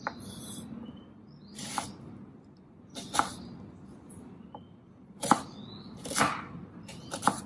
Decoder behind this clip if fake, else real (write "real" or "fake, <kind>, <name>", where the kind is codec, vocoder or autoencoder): fake, vocoder, BigVGAN v2